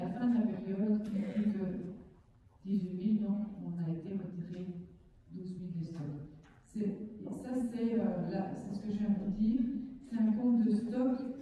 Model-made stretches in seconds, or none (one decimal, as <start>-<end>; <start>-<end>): 0.0-8.0; 9.5-11.4